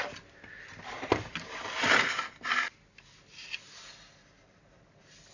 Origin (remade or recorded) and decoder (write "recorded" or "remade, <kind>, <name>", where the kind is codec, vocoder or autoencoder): recorded